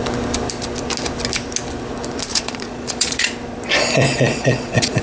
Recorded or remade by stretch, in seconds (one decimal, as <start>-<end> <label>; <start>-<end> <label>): 0.0-2.3 recorded; 2.3-3.3 remade; 3.3-4.1 recorded; 4.1-5.0 remade